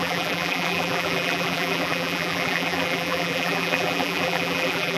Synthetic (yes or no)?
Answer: yes